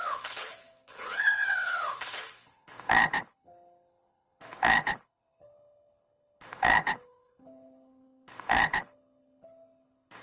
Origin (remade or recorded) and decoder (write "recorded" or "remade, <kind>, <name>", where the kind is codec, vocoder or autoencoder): remade, codec, HILCodec